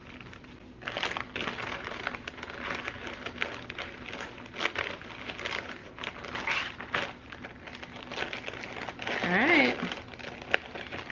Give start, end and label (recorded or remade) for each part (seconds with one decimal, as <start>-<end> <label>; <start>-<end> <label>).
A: 0.0-11.1 recorded